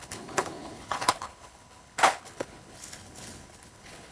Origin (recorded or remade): remade